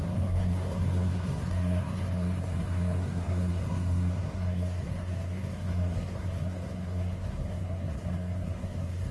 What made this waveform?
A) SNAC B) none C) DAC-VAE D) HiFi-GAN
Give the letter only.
A